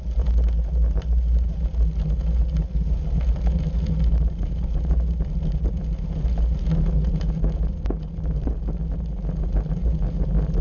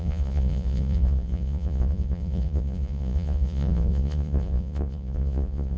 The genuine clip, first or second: first